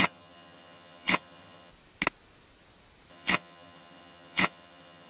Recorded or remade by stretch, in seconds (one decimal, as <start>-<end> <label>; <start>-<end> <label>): 0.0-1.7 remade; 1.7-3.1 recorded; 3.1-5.1 remade